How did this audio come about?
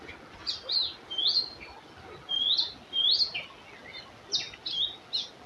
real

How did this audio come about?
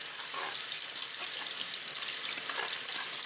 real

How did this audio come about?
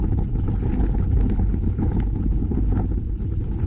fake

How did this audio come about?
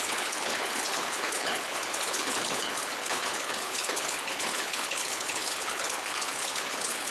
fake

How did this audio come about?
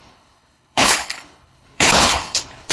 fake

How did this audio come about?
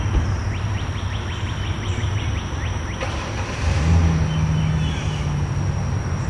real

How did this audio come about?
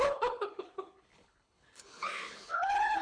fake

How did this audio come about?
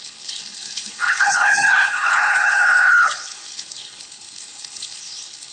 fake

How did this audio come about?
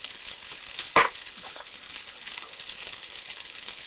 fake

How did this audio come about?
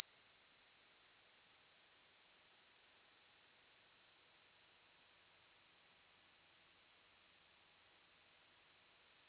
real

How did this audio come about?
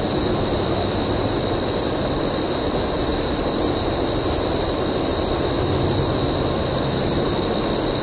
real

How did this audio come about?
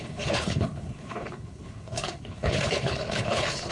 fake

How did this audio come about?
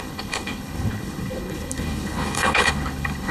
fake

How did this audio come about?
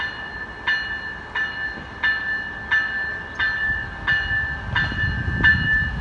real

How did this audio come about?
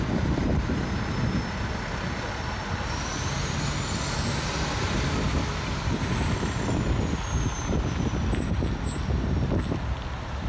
real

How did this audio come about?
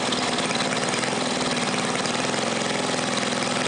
real